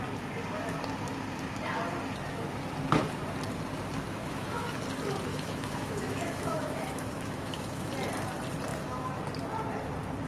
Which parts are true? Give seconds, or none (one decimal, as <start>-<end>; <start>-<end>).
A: 0.0-4.2; 4.7-5.3; 7.9-8.7; 9.2-10.3